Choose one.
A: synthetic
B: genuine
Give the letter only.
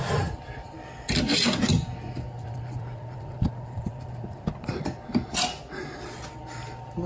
B